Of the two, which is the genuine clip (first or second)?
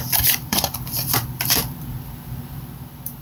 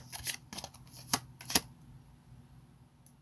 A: second